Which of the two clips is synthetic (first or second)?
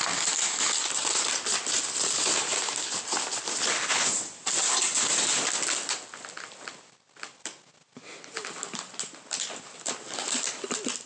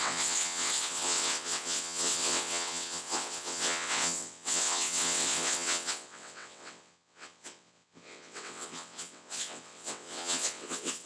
second